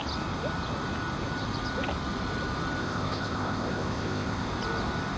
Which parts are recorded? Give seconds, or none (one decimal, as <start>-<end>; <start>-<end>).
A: 0.0-2.8; 4.5-5.2